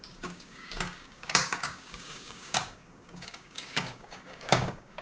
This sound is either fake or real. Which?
fake